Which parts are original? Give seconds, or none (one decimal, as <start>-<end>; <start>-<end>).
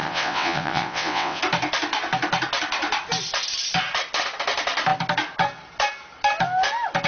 1.4-7.1